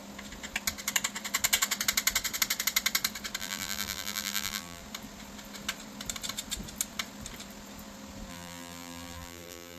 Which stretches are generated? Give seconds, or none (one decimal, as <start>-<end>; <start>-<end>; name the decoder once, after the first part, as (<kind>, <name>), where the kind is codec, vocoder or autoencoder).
3.4-4.8 (vocoder, BigVGAN v2); 8.3-9.8